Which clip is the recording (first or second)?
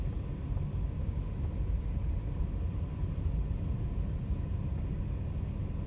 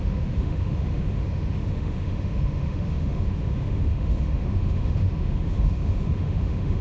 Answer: first